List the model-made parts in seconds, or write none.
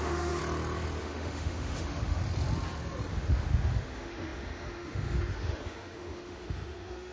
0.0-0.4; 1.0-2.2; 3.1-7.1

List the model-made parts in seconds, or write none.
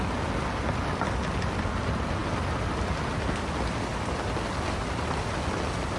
none